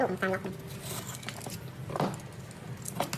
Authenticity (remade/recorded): recorded